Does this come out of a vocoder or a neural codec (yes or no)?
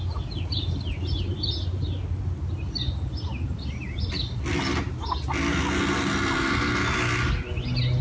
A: no